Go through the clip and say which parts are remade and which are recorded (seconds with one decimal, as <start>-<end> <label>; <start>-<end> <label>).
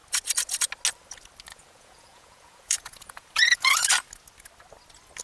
0.0-1.5 recorded; 1.5-3.9 remade; 3.9-5.2 recorded